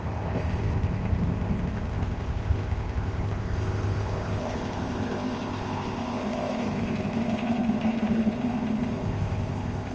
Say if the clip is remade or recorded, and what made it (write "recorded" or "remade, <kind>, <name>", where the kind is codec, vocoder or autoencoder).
remade, codec, ZipCodec